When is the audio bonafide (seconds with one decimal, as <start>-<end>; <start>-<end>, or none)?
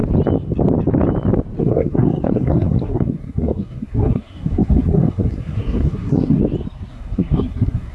0.0-1.6; 6.4-6.9